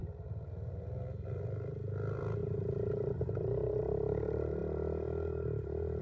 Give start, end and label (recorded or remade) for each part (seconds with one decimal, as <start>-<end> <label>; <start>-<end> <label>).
0.0-1.0 remade; 1.0-2.4 recorded; 2.4-3.8 remade; 3.8-6.0 recorded